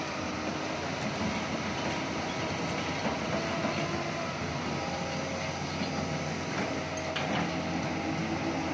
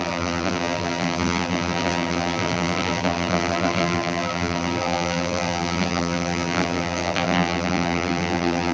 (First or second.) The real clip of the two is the first